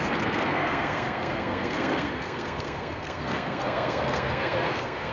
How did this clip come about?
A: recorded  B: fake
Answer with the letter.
B